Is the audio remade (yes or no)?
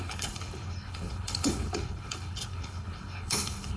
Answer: yes